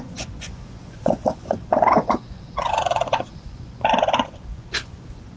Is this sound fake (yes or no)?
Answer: yes